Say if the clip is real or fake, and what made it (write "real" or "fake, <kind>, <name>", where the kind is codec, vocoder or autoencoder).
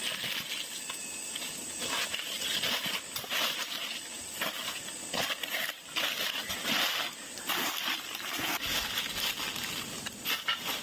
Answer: real